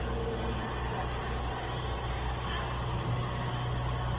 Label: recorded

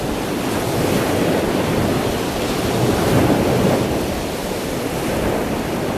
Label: recorded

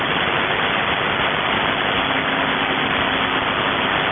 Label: remade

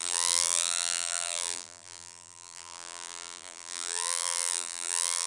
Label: remade